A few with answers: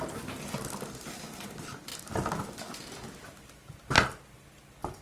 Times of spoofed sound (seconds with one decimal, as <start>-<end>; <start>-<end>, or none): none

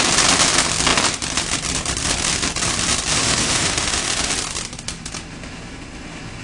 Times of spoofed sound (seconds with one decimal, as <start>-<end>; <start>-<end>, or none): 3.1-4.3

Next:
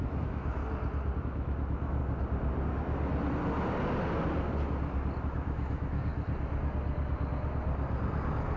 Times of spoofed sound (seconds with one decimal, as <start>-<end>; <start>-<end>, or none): 0.0-0.6; 1.2-2.0; 5.2-6.1

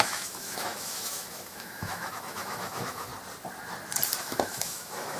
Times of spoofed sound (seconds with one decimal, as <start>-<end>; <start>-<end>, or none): 0.0-3.1; 4.2-5.2